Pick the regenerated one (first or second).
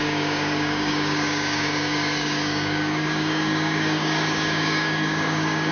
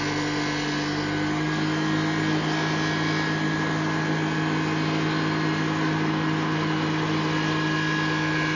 first